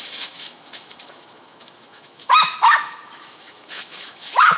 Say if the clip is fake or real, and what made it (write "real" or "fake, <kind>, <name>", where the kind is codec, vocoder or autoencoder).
fake, autoencoder, DAC-VAE